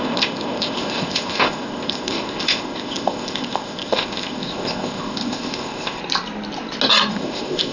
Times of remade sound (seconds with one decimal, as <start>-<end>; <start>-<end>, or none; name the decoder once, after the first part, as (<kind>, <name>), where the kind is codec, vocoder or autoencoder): 0.0-6.0 (codec, ZipCodec); 7.1-7.7